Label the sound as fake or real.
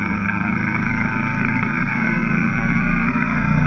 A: fake